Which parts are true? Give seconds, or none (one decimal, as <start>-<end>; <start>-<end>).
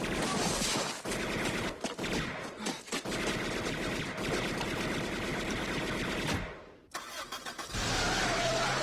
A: 0.0-8.8